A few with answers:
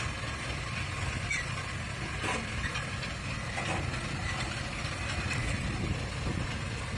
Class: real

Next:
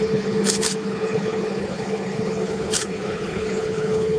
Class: fake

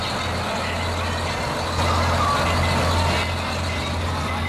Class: real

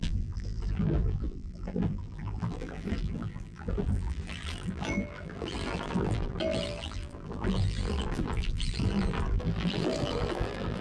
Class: fake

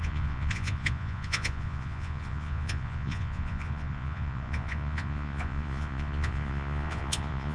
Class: fake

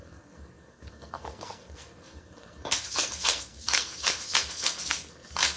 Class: fake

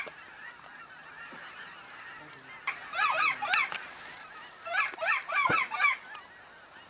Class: real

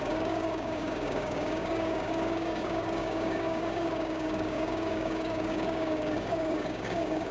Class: fake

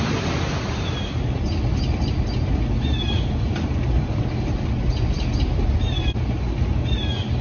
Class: real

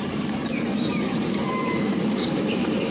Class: fake